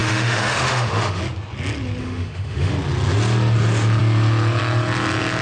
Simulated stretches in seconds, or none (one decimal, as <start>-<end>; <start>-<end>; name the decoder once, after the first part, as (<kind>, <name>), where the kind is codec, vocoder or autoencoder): 0.0-1.2 (autoencoder, DAC-VAE); 2.0-2.7